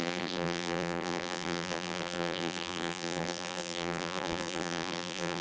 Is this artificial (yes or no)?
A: yes